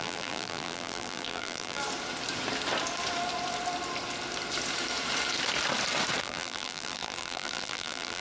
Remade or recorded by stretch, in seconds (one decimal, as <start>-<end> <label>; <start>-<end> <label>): 0.0-1.8 remade; 1.8-6.2 recorded; 6.2-8.2 remade